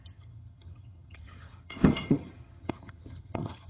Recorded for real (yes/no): no